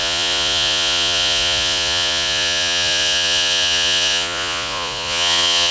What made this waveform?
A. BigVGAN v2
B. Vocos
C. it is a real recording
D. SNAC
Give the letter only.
B